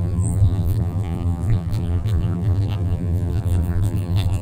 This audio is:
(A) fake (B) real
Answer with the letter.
A